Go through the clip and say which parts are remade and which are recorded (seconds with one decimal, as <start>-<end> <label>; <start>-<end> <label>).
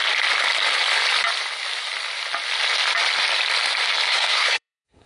0.0-4.1 recorded; 4.1-5.1 remade